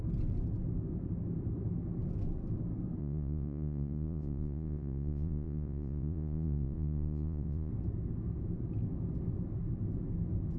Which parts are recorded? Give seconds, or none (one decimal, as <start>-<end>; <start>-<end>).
0.0-3.0; 7.7-10.6